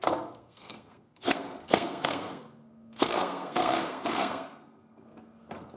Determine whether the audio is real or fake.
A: fake